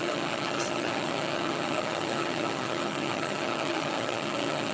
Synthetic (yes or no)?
yes